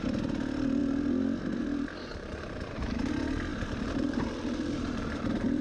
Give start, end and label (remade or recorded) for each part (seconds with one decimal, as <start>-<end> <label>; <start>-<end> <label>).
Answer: 0.0-2.1 recorded; 2.1-3.1 remade; 3.1-3.5 recorded; 3.5-5.6 remade